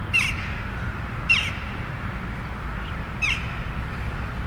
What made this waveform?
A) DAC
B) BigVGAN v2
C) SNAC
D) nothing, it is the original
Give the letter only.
D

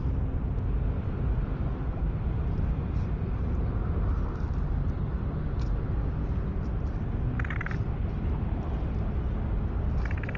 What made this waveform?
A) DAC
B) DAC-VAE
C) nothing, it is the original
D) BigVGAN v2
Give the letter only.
C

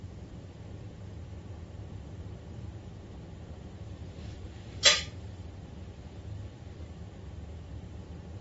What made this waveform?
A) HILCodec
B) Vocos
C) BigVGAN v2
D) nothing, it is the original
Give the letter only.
C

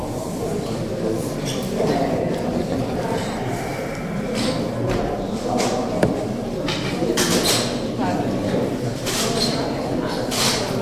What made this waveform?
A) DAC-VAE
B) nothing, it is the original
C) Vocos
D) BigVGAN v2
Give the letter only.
D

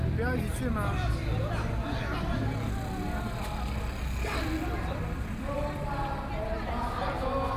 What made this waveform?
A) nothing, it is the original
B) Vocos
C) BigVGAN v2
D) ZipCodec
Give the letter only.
A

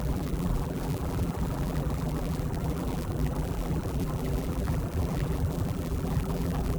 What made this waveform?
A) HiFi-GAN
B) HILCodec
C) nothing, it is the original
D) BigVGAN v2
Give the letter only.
D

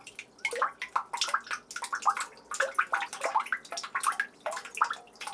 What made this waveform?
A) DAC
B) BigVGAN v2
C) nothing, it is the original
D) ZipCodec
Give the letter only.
C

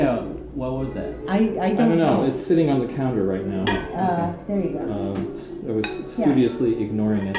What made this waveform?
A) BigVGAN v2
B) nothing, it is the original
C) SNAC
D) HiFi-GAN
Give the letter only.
B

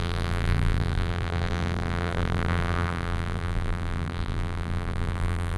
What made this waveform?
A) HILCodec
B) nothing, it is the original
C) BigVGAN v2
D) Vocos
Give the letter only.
C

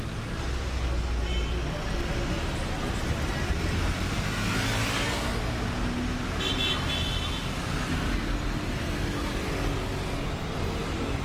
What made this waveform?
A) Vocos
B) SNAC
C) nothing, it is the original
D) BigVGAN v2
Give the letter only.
C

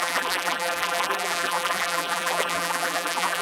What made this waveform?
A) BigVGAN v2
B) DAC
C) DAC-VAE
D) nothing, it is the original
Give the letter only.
A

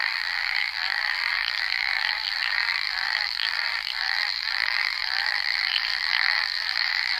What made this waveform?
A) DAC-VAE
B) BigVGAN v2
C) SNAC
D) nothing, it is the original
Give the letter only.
B